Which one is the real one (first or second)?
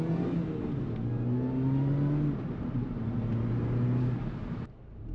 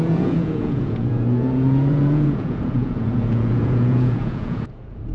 first